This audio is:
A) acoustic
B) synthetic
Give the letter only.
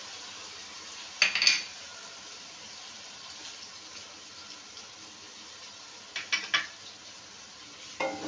A